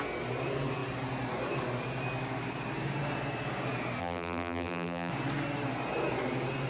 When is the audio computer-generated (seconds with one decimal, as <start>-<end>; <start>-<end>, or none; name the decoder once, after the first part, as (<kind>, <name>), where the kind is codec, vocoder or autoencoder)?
4.0-5.1 (vocoder, BigVGAN v2)